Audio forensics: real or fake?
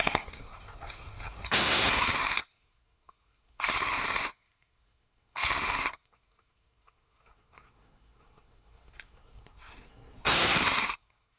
fake